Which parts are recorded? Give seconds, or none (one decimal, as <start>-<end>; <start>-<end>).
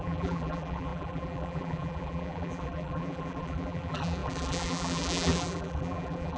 none